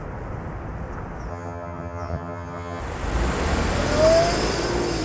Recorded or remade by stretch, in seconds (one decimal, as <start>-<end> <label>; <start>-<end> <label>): 0.0-1.3 recorded; 1.3-2.8 remade; 2.8-5.0 recorded